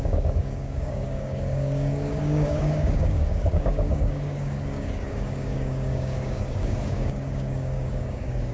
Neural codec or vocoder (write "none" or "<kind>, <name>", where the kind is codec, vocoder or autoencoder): codec, DAC